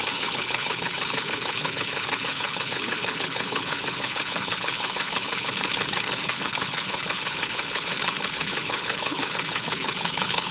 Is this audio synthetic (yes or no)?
yes